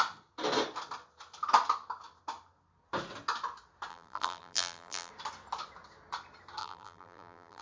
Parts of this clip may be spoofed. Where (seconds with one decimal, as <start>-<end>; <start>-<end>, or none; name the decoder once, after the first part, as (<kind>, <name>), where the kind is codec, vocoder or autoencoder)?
3.9-5.1 (vocoder, BigVGAN v2); 6.6-7.6